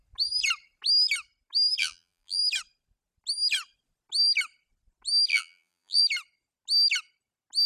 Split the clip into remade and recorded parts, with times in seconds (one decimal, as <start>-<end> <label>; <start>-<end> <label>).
0.0-1.8 recorded; 1.8-2.4 remade; 2.4-5.3 recorded; 5.3-6.0 remade; 6.0-7.7 recorded